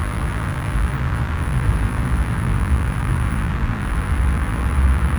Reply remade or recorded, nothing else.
remade